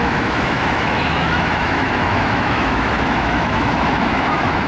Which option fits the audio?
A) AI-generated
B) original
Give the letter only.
A